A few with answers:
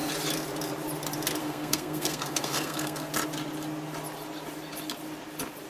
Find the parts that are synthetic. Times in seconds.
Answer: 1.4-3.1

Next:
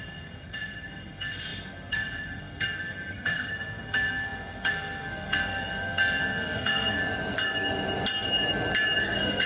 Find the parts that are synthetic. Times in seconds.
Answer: 0.0-7.0; 9.0-9.5

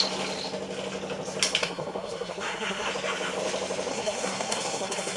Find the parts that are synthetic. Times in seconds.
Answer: 1.6-2.9; 3.9-5.2

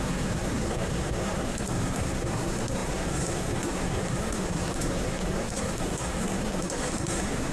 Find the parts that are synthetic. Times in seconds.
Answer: 0.0-7.5

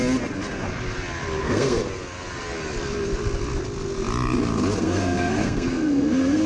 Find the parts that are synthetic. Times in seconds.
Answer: 1.4-1.8; 4.8-6.5

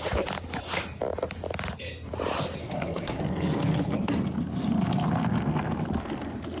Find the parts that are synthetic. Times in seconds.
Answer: 2.6-3.2

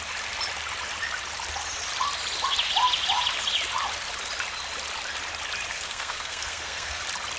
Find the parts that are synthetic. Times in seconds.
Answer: 5.7-7.0